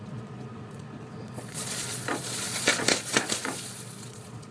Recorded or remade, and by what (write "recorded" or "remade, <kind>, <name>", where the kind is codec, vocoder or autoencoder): remade, vocoder, Vocos